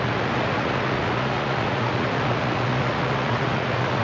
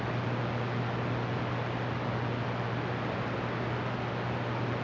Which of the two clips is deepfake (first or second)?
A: first